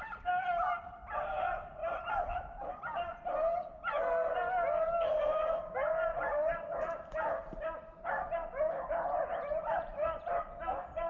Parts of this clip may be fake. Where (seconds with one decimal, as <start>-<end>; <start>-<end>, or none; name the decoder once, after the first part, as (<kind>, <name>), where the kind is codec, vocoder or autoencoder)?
1.8-2.8 (vocoder, BigVGAN v2)